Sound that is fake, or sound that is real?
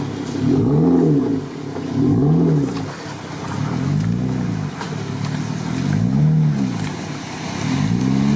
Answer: real